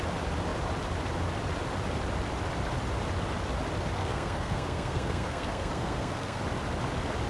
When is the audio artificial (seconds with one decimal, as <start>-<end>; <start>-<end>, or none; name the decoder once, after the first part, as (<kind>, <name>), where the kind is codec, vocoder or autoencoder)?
4.0-6.4 (codec, SNAC)